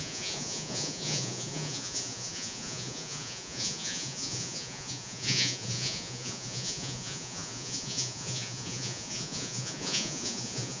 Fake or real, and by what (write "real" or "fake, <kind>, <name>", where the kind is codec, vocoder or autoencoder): fake, vocoder, Vocos